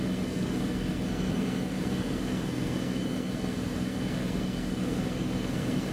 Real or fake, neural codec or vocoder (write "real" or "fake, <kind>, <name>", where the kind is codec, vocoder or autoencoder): fake, codec, SNAC